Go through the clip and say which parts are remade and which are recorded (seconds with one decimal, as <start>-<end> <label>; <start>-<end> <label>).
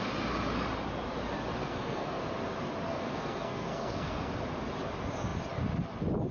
0.0-1.6 recorded; 1.6-2.2 remade; 2.2-2.9 recorded; 2.9-4.3 remade; 4.3-6.3 recorded